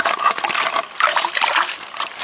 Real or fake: real